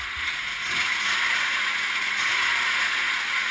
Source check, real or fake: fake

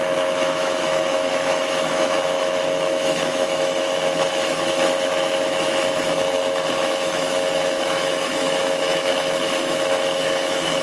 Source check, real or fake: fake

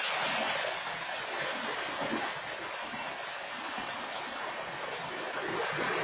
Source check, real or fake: real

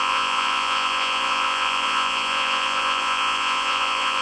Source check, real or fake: fake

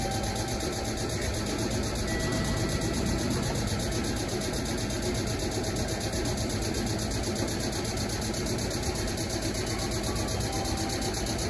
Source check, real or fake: real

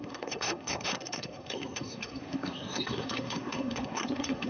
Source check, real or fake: fake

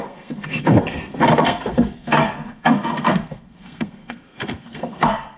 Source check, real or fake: fake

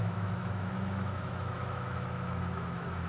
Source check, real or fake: fake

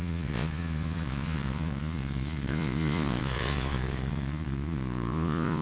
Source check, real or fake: fake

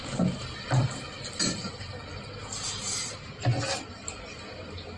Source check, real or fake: real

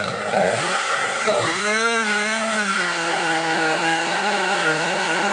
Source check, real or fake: fake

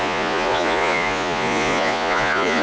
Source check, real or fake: fake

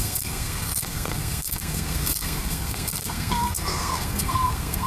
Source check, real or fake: fake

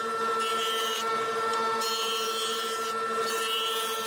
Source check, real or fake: fake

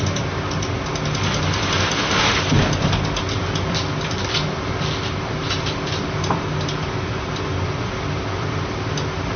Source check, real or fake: real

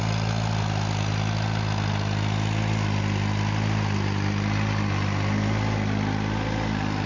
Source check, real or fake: real